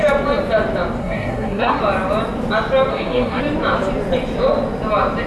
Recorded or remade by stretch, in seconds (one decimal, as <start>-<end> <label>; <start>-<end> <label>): 0.0-1.0 recorded; 1.0-1.8 remade; 1.8-2.9 recorded; 2.9-3.4 remade; 3.4-5.3 recorded